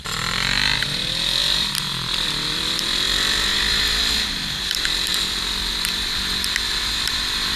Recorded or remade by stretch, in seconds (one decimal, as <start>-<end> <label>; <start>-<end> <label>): 0.0-3.5 remade; 3.5-4.6 recorded; 4.6-7.6 remade